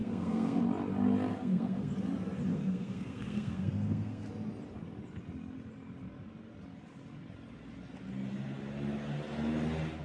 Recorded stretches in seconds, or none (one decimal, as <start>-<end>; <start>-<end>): 0.6-1.3; 1.9-2.5; 4.3-10.0